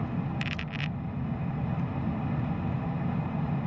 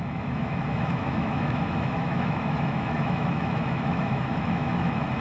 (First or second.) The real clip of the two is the first